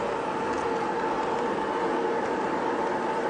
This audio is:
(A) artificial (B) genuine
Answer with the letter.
B